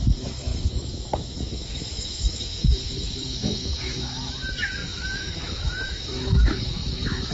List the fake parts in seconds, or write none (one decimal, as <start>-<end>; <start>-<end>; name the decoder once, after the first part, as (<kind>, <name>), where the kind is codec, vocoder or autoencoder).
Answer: 0.0-7.3 (autoencoder, DAC-VAE)